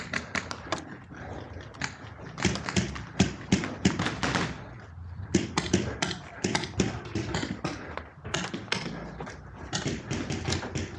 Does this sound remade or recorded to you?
recorded